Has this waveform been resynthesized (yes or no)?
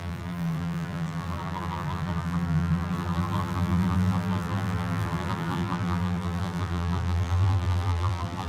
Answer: yes